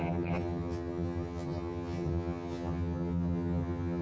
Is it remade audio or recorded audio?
remade